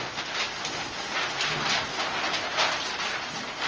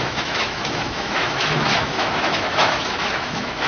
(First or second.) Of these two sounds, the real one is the first